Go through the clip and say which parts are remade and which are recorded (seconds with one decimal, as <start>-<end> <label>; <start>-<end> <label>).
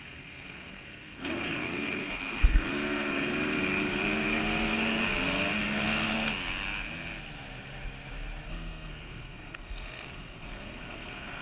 0.0-3.3 remade; 3.3-8.5 recorded; 8.5-11.4 remade